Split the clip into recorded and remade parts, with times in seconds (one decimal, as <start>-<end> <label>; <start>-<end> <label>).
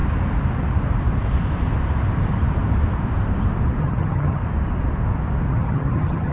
0.0-3.8 recorded; 3.8-4.4 remade; 4.4-5.5 recorded; 5.5-6.3 remade